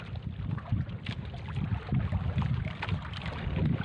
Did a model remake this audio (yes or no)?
no